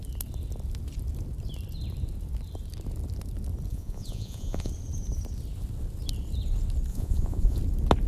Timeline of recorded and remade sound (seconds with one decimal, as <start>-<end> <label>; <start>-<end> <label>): 0.0-3.7 recorded; 3.7-4.7 remade; 4.7-6.9 recorded; 6.9-7.6 remade; 7.6-8.1 recorded